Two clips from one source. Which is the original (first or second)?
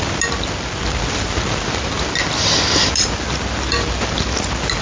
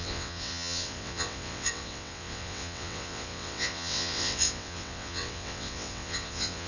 first